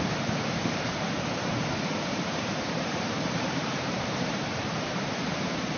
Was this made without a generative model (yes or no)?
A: no